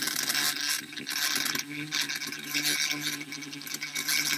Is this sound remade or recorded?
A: recorded